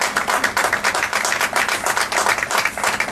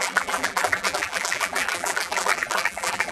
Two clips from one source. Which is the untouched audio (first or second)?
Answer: first